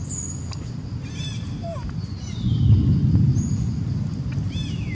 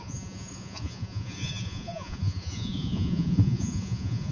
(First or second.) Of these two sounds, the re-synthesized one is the second